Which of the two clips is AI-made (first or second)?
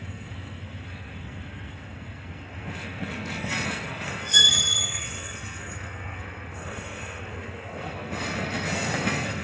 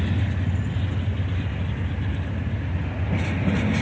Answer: first